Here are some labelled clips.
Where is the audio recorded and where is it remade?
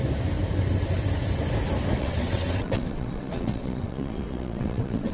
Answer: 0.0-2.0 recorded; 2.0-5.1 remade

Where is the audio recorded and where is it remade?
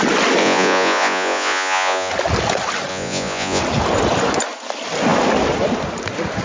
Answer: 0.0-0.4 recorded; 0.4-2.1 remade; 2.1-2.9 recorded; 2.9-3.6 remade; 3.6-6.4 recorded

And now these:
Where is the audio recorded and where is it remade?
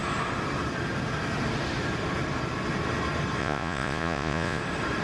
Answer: 0.0-3.4 recorded; 3.4-4.6 remade; 4.6-5.0 recorded